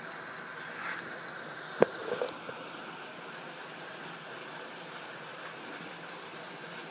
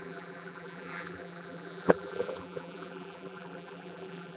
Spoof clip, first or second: second